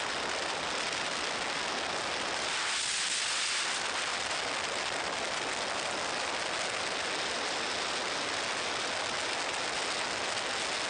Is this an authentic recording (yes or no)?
yes